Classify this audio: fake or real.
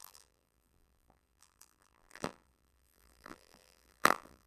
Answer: fake